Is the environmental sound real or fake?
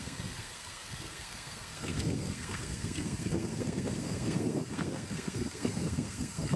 fake